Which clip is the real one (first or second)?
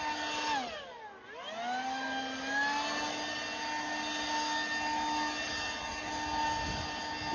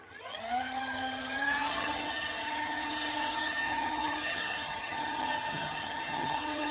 first